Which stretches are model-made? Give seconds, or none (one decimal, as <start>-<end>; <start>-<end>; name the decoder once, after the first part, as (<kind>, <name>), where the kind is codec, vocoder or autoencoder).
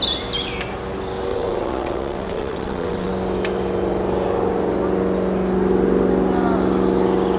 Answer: 1.3-3.1 (vocoder, WaveNeXt)